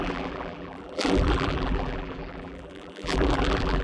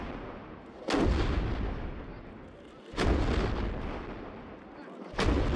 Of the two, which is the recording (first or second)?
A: second